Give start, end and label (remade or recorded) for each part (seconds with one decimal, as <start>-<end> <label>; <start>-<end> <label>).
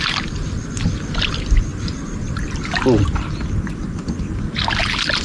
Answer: 0.0-5.2 recorded